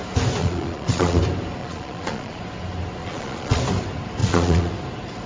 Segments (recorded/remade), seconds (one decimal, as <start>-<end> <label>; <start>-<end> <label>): 0.0-0.4 recorded; 0.4-1.2 remade; 1.2-1.6 recorded; 1.6-2.4 remade; 2.4-3.0 recorded; 3.0-3.6 remade; 3.6-4.2 recorded; 4.2-4.7 remade; 4.7-5.3 recorded